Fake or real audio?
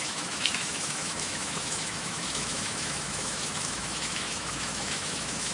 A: fake